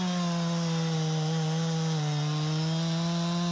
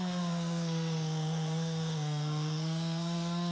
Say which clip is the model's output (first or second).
second